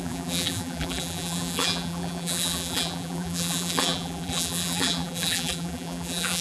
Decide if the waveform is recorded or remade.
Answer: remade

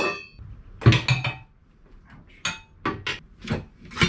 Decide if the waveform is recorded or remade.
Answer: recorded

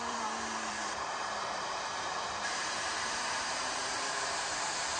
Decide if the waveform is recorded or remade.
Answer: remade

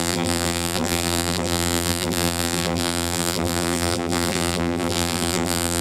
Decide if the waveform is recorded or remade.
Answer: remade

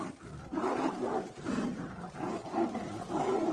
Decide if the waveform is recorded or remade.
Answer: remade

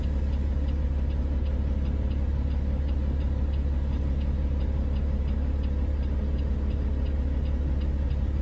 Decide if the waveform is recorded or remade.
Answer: recorded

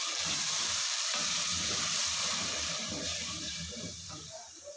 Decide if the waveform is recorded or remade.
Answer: remade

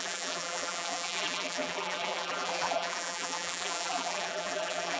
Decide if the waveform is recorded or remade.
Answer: remade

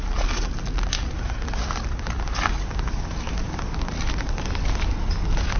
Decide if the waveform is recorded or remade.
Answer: recorded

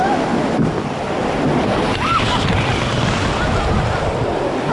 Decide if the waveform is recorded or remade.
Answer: recorded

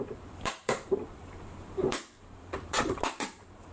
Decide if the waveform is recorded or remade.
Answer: remade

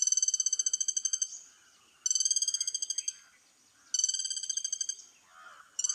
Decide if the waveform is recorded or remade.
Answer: recorded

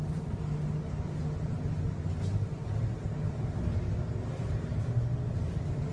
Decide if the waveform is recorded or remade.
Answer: recorded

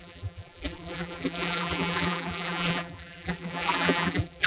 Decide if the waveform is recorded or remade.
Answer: remade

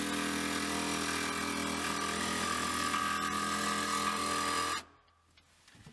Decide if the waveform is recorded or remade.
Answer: recorded